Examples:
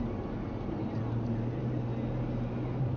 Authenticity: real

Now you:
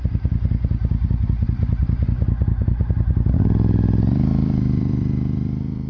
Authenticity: fake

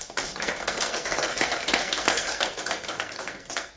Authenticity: fake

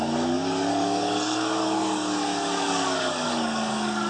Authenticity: fake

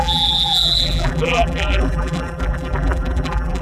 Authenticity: fake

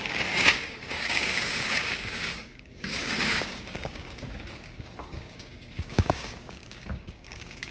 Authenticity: fake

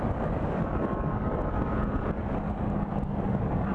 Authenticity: fake